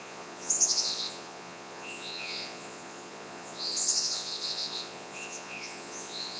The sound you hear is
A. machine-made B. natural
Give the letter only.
A